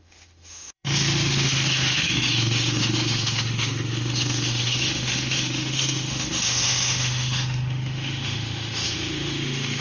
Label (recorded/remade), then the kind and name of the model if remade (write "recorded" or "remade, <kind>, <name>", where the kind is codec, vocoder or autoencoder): remade, autoencoder, DAC-VAE